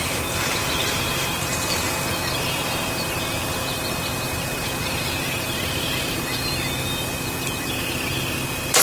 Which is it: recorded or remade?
recorded